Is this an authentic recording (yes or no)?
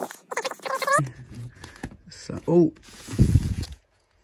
no